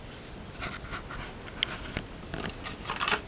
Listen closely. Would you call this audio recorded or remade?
recorded